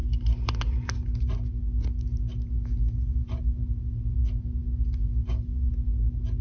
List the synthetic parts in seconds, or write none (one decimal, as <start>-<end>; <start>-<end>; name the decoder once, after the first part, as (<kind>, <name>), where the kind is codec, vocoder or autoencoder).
none